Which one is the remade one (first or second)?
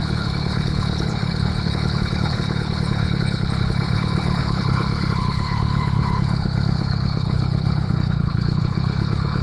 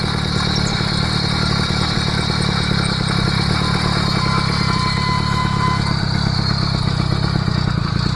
first